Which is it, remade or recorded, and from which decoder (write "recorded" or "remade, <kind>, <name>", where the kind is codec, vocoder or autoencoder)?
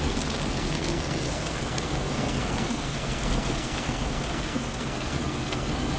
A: remade, codec, SNAC